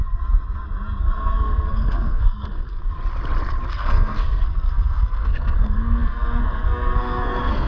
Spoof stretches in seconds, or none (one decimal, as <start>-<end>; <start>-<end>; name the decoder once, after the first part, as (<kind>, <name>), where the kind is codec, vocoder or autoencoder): 1.0-2.8 (codec, SNAC); 3.7-7.7